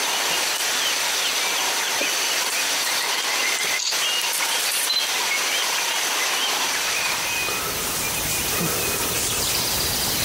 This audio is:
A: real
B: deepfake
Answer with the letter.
A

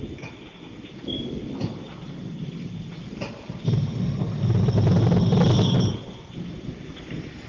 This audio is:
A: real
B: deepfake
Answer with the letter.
A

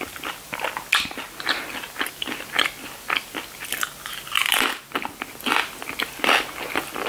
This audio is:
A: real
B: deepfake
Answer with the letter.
A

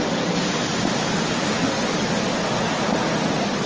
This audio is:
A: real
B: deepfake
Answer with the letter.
A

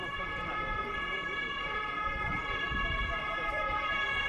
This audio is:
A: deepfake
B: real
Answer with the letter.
B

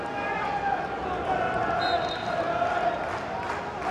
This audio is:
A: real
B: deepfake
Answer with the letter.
A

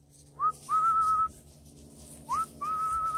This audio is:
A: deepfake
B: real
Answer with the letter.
B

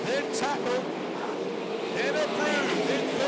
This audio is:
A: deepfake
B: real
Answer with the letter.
B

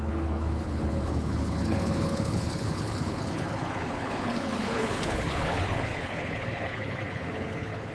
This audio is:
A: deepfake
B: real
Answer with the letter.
A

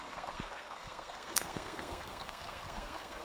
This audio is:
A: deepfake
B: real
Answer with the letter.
A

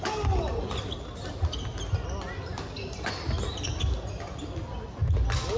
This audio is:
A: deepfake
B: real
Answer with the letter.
B